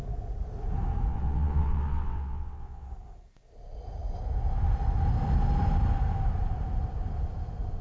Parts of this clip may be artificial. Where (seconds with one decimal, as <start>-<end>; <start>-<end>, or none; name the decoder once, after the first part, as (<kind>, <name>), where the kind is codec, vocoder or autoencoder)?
1.1-2.9 (vocoder, WaveNeXt)

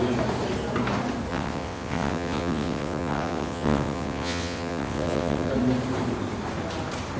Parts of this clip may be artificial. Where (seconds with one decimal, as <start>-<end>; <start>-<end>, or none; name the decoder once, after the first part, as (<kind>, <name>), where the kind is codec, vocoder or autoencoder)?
1.3-5.5 (vocoder, WaveNeXt)